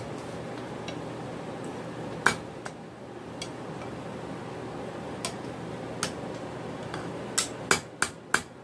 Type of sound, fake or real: real